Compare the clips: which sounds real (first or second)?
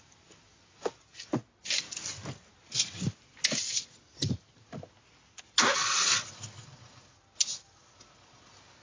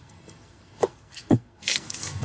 first